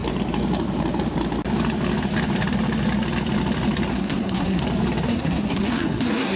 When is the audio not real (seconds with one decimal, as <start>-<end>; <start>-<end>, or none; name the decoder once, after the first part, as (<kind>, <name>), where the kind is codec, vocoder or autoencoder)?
3.9-4.6 (codec, SNAC); 5.1-6.4